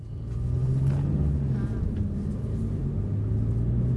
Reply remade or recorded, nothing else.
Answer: recorded